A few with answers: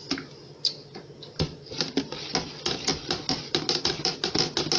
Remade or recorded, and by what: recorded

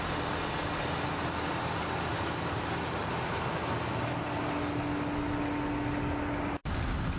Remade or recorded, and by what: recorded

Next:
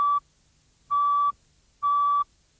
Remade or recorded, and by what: recorded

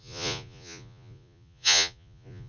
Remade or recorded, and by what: remade, vocoder, Vocos